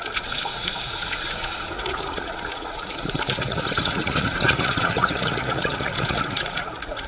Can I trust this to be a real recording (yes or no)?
no